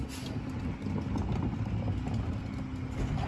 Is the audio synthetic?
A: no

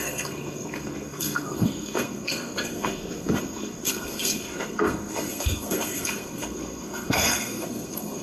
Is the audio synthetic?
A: yes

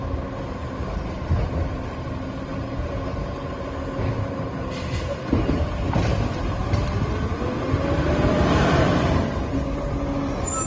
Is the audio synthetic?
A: no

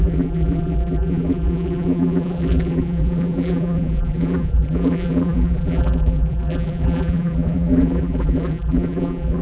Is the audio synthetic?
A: yes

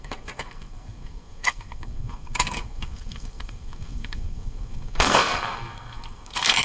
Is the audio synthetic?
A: yes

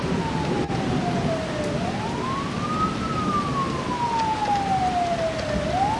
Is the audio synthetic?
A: no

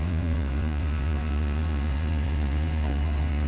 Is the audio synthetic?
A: yes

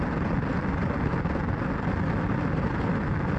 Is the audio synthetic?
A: no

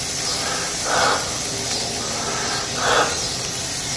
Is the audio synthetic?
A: no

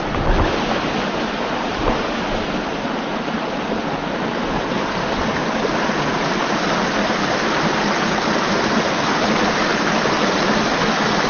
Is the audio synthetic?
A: no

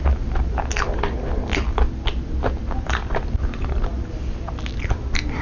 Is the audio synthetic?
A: no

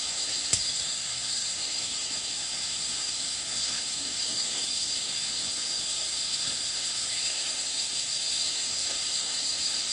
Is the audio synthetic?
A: yes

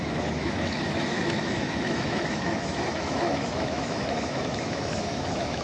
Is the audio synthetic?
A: yes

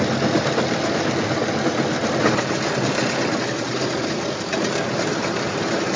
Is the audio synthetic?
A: no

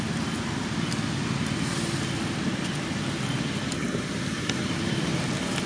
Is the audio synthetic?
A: no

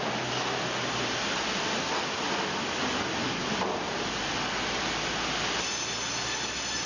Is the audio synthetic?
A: no